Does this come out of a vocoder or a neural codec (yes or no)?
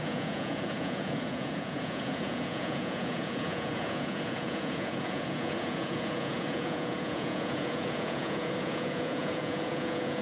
yes